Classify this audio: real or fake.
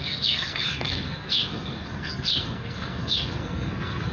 fake